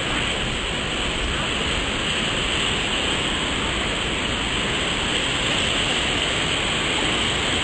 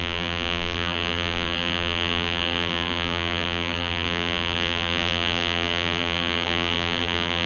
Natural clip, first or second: first